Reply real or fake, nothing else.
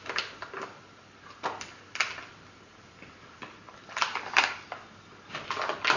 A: real